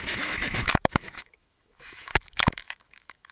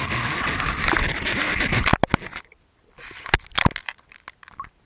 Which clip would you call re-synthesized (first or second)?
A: first